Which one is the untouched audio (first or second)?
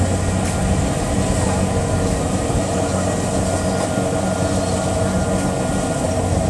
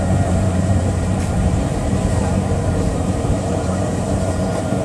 first